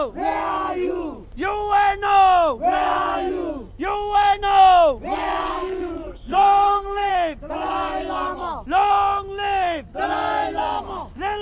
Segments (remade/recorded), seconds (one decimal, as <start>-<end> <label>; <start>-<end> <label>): 0.0-5.5 recorded; 5.5-7.1 remade; 7.1-11.4 recorded